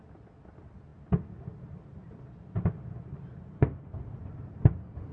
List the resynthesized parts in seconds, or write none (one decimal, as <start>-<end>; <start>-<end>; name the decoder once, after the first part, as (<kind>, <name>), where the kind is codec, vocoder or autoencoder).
none